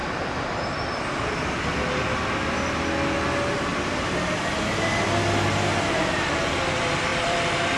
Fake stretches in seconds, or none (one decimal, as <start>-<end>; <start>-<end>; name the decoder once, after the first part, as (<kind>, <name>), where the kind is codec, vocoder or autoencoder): 3.7-4.4 (vocoder, BigVGAN v2); 7.1-7.8